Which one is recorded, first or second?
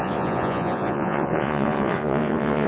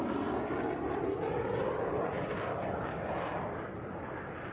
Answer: second